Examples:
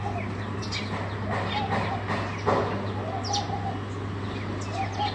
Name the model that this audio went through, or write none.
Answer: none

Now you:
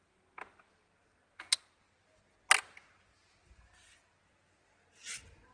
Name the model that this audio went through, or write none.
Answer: none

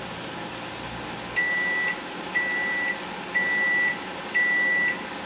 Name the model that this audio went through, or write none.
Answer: none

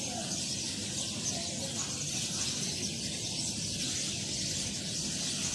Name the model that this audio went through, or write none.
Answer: none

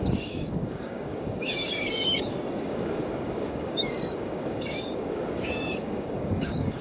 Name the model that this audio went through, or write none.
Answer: codec, DAC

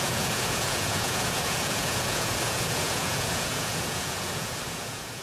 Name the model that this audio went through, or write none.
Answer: vocoder, Vocos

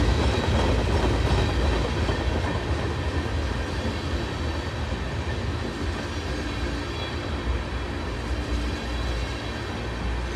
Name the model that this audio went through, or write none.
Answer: none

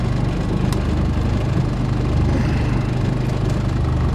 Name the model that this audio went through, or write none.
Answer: none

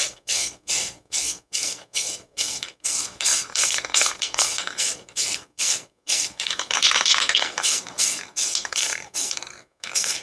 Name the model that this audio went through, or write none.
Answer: codec, SNAC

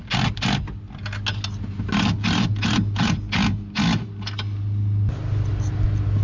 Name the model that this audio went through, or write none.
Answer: none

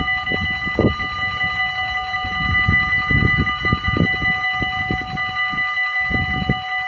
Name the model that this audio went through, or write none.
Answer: none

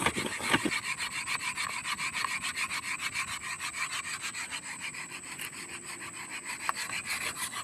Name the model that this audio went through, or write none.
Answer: none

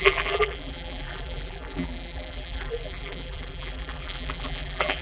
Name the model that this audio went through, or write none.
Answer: vocoder, BigVGAN v2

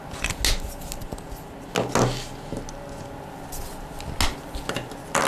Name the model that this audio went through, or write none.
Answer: none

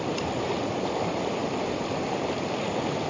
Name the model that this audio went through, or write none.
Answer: none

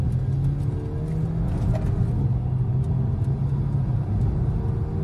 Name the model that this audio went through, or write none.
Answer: none